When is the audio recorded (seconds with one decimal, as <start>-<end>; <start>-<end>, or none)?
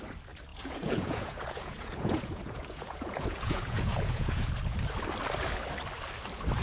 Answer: 0.0-0.5; 4.5-6.6